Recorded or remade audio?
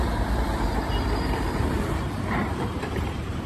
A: remade